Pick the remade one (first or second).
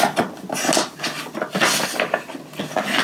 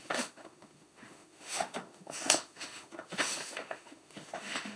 second